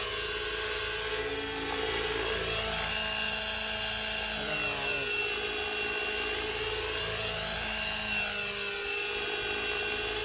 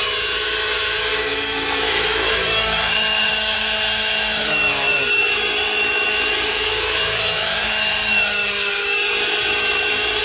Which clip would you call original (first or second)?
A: first